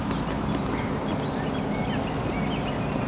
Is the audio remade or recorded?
recorded